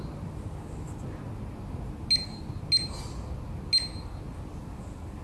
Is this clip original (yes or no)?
yes